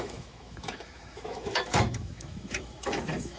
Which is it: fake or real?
fake